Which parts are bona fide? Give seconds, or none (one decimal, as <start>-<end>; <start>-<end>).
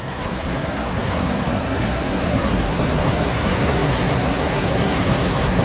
none